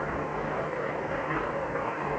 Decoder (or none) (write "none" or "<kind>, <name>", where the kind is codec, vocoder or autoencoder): codec, DAC